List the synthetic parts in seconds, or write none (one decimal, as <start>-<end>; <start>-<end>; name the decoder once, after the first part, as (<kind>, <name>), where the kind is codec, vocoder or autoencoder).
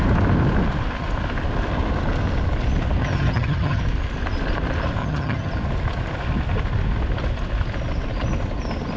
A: 3.0-3.8 (vocoder, HiFi-GAN); 5.0-5.5